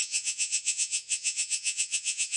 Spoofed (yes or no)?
yes